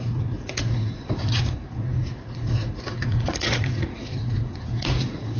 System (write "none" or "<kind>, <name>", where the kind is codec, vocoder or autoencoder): vocoder, Vocos